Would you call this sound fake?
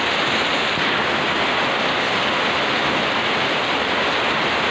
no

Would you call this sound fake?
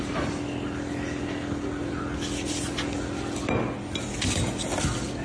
no